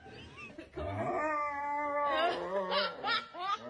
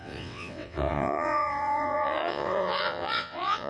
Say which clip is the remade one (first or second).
second